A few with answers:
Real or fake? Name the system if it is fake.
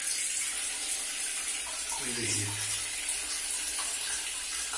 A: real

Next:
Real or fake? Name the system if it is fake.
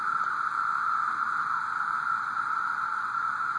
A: real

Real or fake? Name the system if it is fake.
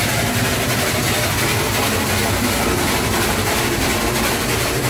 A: real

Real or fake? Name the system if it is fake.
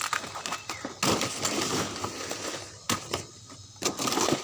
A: real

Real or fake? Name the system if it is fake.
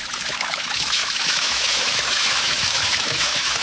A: fake, autoencoder, DAC-VAE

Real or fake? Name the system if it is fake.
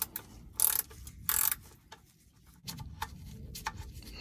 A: real